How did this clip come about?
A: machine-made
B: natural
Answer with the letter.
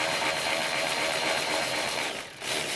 A